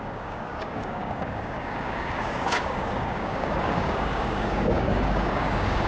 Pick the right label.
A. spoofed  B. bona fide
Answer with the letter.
A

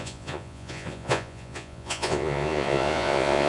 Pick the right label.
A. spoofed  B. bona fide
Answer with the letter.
A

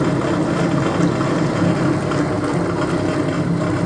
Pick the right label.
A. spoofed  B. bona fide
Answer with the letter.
B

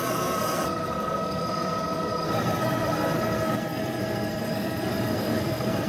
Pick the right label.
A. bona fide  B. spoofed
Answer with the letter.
B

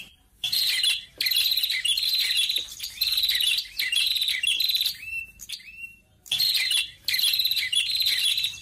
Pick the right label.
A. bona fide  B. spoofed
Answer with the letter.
B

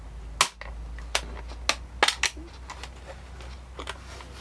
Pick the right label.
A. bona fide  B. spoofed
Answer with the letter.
A